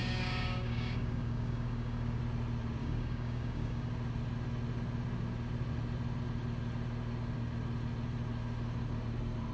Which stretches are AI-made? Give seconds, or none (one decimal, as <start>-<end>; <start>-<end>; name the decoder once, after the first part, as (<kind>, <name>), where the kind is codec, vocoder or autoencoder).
0.0-2.2 (codec, DAC); 2.8-3.9